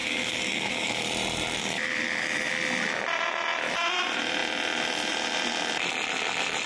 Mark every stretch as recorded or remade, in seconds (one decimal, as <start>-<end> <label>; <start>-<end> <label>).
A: 0.0-1.1 remade; 1.1-1.6 recorded; 1.6-2.5 remade; 2.5-6.7 recorded